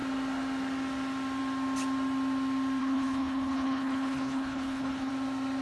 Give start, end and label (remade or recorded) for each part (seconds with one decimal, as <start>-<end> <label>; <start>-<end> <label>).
0.0-2.8 recorded; 2.8-5.1 remade; 5.1-5.6 recorded